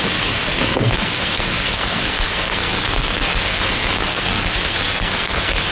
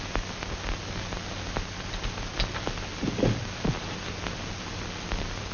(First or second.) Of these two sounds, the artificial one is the first